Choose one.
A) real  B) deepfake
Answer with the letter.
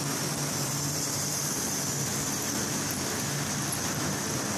A